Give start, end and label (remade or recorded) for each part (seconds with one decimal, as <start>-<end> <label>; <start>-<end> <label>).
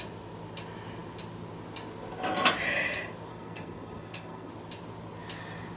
0.0-3.3 recorded; 3.3-4.5 remade; 4.5-5.8 recorded